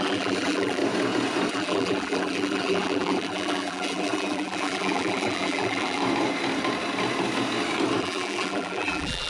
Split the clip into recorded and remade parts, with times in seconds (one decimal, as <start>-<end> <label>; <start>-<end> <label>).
0.0-0.8 remade; 0.8-1.5 recorded; 1.5-6.0 remade; 6.0-8.0 recorded; 8.0-9.3 remade